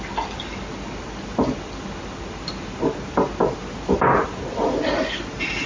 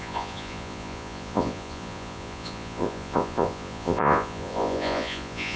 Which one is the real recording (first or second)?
first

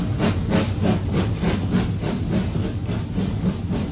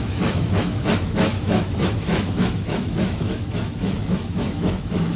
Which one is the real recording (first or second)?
first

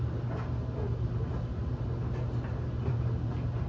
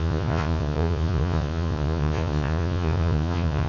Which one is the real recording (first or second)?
first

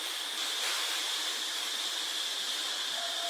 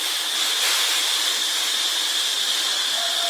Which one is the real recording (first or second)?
second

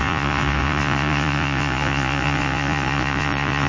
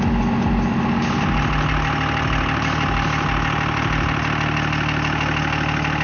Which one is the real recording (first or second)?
second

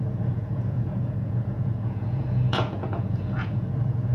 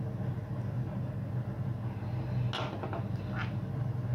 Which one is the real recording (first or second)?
second